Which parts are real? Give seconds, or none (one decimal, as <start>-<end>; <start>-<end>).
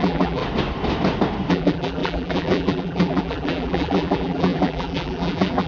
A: 0.4-1.5